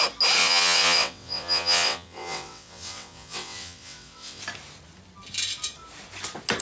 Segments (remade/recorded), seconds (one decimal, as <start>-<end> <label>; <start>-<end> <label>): 0.0-0.4 recorded; 0.4-4.4 remade; 4.4-6.6 recorded